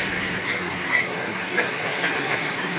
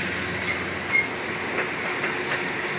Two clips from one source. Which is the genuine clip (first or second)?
second